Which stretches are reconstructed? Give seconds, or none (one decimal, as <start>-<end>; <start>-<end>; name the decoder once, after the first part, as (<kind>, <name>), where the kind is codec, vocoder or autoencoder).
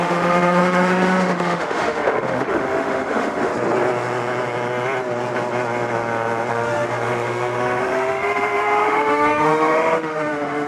0.0-3.5 (autoencoder, DAC-VAE); 6.5-10.7